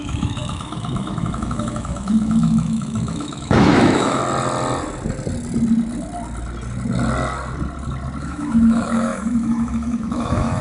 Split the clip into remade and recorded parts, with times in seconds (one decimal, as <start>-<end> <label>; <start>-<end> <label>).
0.0-4.2 remade; 4.2-8.2 recorded; 8.2-10.6 remade